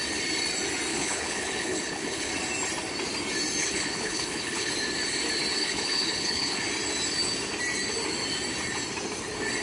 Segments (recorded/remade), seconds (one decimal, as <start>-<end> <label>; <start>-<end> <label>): 0.0-0.9 recorded; 0.9-2.3 remade; 2.3-3.6 recorded; 3.6-4.7 remade; 4.7-5.5 recorded; 5.5-6.6 remade; 6.6-9.6 recorded